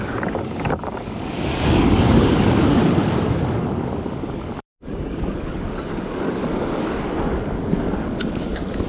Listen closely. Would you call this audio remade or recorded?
remade